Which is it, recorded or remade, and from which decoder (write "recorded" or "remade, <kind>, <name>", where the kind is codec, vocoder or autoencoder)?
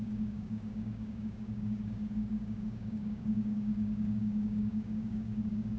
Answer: remade, codec, DAC